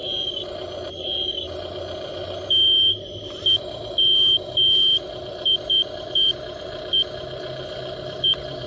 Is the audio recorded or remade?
recorded